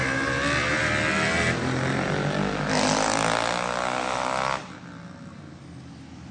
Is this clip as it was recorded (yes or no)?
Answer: yes